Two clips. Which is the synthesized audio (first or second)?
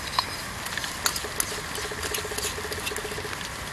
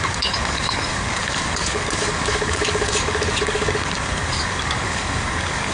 second